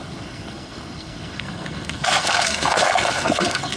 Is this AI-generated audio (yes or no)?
yes